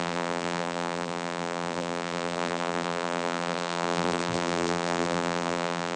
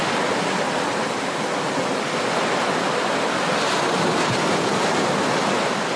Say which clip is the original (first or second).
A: second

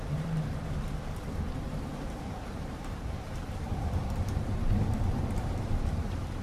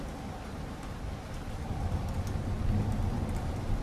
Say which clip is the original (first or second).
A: second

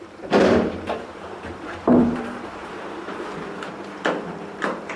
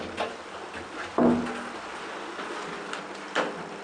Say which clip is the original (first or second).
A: second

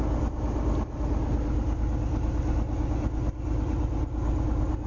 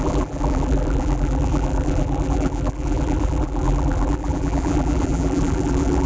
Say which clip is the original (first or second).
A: first